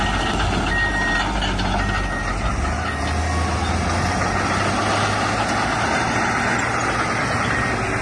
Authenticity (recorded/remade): recorded